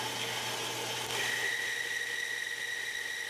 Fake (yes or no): no